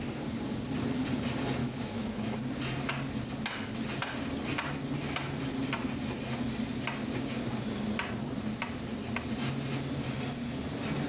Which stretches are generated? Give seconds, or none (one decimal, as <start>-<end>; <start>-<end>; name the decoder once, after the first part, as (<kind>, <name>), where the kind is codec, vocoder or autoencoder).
1.6-2.4 (autoencoder, DAC-VAE)